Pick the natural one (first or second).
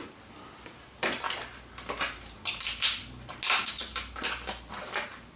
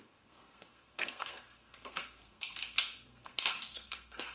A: first